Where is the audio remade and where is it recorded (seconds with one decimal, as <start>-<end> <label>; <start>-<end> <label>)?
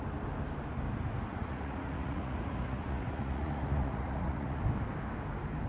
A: 0.0-1.3 recorded; 1.3-4.6 remade; 4.6-5.7 recorded